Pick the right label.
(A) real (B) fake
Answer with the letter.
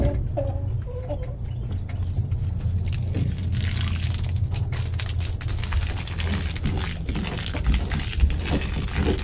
A